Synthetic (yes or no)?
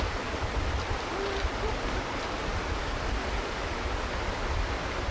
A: no